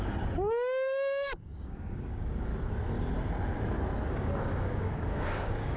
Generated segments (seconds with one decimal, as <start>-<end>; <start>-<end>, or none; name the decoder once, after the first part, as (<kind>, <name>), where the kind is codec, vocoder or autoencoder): 0.0-2.5 (codec, DAC); 4.1-5.8